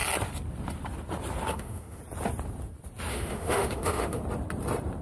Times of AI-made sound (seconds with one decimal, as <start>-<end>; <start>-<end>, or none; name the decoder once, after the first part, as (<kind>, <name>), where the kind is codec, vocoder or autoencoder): 1.5-2.0 (autoencoder, DAC-VAE); 3.1-4.2